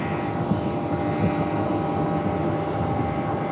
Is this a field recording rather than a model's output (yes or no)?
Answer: yes